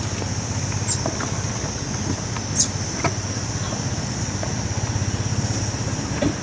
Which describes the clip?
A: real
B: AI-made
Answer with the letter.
A